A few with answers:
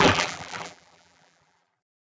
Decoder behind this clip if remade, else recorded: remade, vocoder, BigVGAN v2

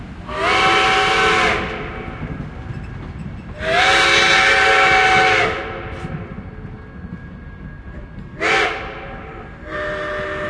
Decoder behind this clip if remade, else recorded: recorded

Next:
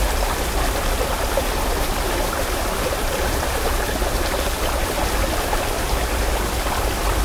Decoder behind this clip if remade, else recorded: remade, vocoder, BigVGAN v2